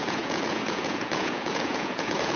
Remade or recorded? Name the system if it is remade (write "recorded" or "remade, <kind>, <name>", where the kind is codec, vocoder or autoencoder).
remade, vocoder, Vocos